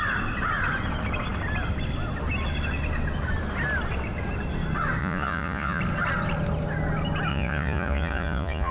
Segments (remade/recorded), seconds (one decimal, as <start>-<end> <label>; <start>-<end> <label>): 0.0-5.0 recorded; 5.0-5.8 remade; 5.8-7.3 recorded; 7.3-8.7 remade